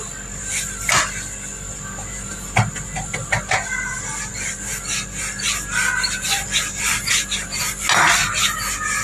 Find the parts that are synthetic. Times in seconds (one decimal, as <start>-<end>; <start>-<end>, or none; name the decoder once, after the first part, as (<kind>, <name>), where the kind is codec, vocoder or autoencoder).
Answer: none

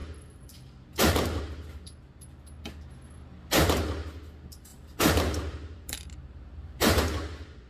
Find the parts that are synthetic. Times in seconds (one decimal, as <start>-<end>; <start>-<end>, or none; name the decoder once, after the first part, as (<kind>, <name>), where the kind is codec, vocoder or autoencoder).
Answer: 0.0-1.4 (vocoder, BigVGAN v2); 4.7-7.0